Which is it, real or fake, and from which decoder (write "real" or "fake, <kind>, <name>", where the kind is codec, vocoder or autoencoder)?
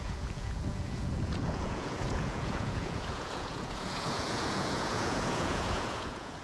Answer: fake, vocoder, Vocos